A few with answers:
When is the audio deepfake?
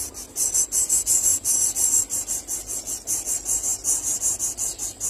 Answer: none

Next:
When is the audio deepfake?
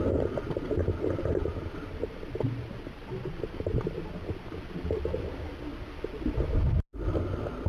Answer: none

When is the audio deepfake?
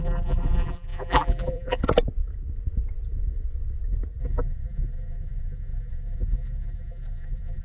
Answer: 0.0-1.8 (vocoder, BigVGAN v2); 4.2-7.6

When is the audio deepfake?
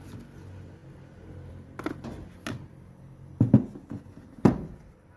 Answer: none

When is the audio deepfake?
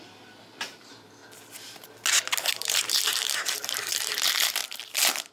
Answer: 0.0-1.2 (vocoder, BigVGAN v2); 2.5-4.6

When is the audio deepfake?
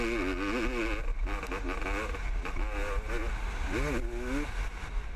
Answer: none